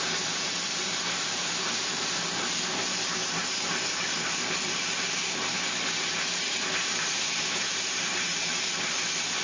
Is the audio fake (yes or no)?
yes